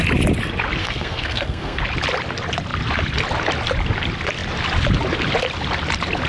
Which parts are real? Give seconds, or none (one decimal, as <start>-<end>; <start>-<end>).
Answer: 0.0-0.8; 1.8-6.3